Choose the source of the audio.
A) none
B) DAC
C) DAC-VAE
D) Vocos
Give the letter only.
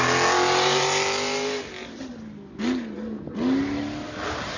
A